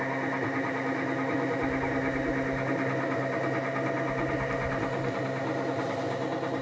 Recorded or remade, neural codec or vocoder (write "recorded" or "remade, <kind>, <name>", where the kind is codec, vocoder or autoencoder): recorded